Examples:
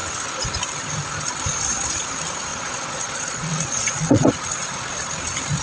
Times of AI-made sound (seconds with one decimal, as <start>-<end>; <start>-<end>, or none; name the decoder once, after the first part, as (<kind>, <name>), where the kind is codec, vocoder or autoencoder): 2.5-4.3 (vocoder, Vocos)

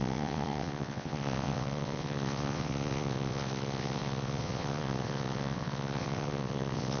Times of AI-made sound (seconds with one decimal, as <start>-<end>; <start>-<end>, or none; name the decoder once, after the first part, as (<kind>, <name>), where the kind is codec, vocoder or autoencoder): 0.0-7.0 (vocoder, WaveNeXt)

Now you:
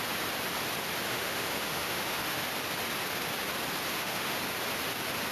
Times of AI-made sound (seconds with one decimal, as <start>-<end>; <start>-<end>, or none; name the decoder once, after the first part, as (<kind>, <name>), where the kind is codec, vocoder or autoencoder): 1.1-2.5 (autoencoder, DAC-VAE); 3.9-4.4

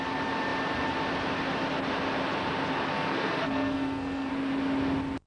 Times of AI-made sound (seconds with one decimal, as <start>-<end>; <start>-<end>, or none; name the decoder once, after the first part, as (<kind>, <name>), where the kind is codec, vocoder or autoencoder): 2.9-4.3 (codec, SNAC)

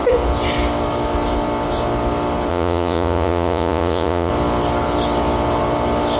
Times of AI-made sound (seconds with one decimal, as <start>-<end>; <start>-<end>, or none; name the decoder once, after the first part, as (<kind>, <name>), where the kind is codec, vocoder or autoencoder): 2.5-4.3 (vocoder, Vocos)

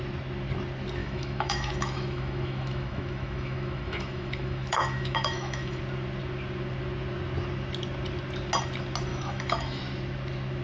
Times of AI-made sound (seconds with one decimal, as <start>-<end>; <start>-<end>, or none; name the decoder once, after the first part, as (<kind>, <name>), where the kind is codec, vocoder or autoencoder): 1.0-5.8 (autoencoder, DAC-VAE); 9.1-9.8

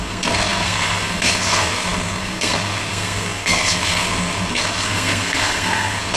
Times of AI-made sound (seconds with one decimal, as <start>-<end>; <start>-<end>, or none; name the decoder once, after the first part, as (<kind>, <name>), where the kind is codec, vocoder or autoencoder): 0.0-6.2 (codec, SNAC)

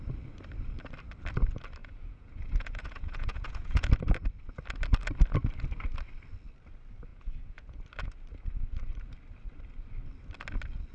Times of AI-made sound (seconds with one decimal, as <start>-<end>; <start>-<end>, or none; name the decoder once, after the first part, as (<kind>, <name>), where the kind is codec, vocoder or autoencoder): 1.8-3.9 (vocoder, Vocos); 7.1-7.8